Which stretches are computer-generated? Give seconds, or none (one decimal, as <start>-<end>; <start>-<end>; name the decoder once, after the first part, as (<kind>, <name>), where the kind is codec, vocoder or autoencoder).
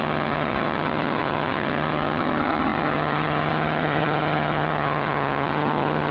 0.0-6.1 (vocoder, HiFi-GAN)